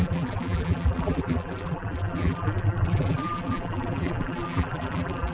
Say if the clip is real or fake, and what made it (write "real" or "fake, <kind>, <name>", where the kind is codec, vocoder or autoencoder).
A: fake, vocoder, BigVGAN v2